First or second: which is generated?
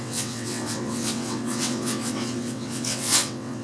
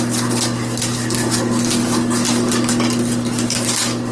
first